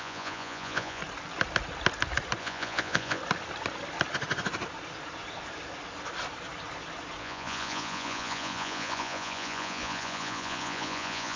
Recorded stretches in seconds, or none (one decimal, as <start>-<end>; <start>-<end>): 1.0-2.4; 3.2-7.2